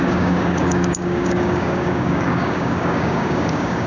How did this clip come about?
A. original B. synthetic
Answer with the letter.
B